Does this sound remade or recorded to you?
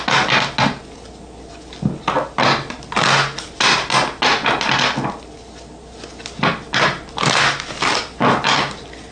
recorded